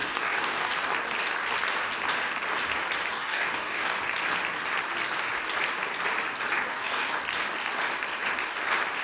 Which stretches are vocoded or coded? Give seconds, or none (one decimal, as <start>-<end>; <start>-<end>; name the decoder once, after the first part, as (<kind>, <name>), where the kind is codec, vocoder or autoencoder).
0.0-0.7 (codec, DAC); 3.1-4.0; 6.7-7.2